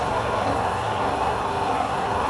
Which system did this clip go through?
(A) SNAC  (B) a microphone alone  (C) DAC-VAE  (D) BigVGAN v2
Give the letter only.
A